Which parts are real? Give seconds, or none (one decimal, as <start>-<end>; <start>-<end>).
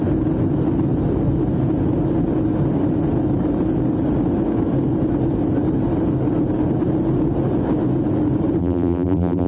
0.0-8.6